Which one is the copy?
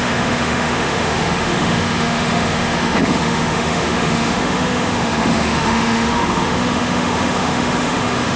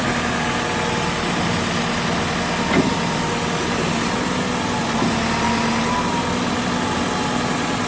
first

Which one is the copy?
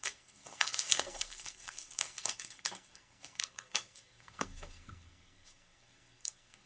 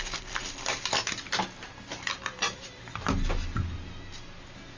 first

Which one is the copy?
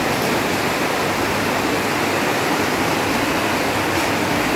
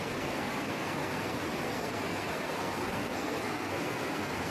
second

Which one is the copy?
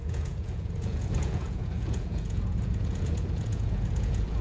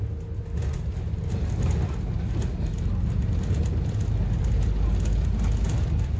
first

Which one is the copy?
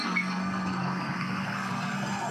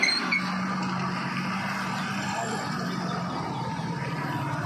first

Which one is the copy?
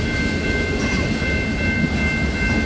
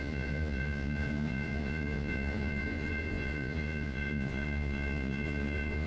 second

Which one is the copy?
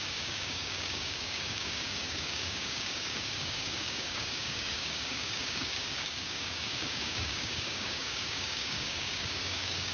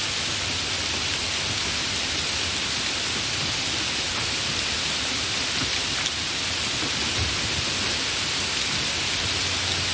first